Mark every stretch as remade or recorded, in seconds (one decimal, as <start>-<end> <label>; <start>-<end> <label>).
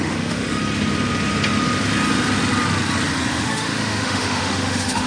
0.0-0.6 remade; 0.6-3.3 recorded; 3.3-5.1 remade